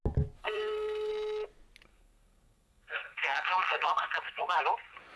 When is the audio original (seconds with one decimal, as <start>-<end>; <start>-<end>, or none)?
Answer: 0.0-0.4; 1.1-1.9; 4.6-5.2